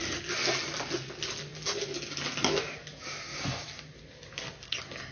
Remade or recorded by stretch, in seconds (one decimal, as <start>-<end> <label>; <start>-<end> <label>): 0.0-5.1 recorded